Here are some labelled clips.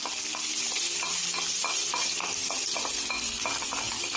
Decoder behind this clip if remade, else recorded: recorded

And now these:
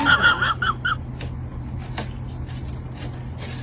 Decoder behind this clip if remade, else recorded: recorded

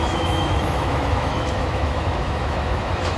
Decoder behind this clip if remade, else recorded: remade, autoencoder, DAC-VAE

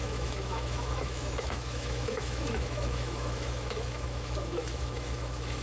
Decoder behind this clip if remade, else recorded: remade, autoencoder, DAC-VAE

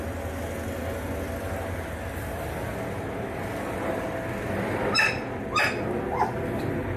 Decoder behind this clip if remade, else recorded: recorded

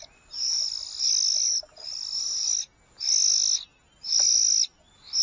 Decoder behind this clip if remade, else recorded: recorded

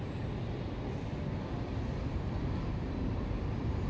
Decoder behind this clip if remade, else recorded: recorded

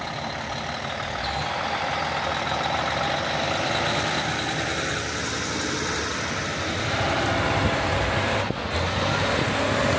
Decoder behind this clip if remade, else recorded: recorded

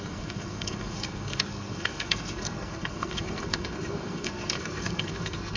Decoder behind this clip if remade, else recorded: remade, codec, SNAC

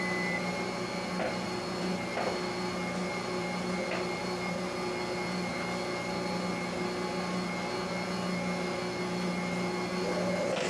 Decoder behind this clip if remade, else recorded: recorded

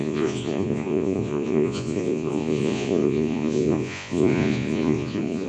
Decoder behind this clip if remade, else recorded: remade, vocoder, Vocos